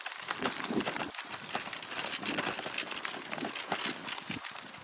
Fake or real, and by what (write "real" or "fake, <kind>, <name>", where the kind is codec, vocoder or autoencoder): real